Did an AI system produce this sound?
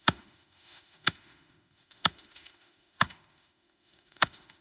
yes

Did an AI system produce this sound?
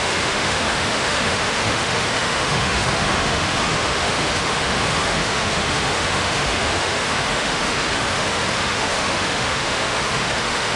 yes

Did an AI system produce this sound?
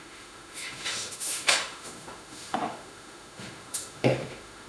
yes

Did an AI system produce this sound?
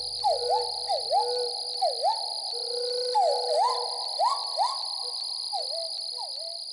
no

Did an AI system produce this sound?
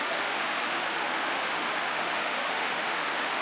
yes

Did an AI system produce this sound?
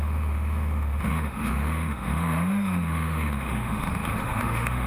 yes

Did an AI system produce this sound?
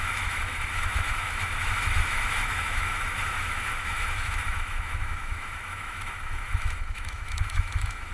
yes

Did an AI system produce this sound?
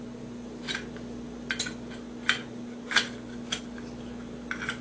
no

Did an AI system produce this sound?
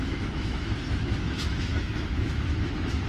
yes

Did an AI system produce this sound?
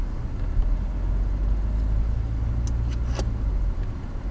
no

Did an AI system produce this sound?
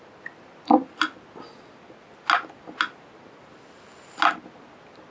no